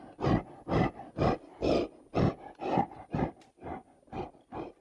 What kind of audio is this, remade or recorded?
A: recorded